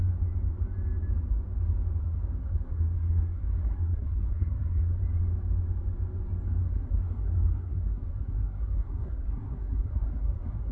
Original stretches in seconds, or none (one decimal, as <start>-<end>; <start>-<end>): 0.0-2.0; 5.0-6.6